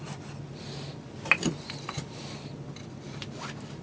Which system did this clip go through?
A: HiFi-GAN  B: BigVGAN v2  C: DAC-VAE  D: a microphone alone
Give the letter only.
D